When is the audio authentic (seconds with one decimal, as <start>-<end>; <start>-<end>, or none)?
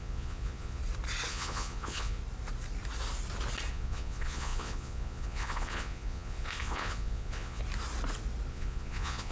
0.8-1.3; 2.2-3.7; 7.6-8.5